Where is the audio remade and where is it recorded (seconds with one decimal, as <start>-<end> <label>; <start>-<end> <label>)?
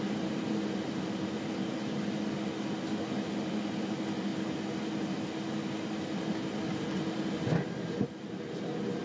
0.0-9.0 recorded